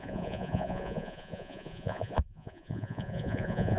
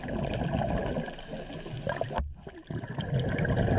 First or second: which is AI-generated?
first